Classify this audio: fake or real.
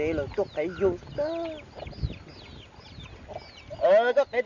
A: real